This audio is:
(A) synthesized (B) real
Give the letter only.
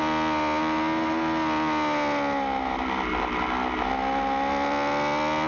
B